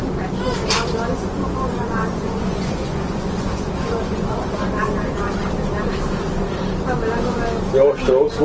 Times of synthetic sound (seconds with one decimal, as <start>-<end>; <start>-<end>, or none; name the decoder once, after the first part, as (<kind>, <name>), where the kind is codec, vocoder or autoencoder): 1.1-5.3 (vocoder, Vocos)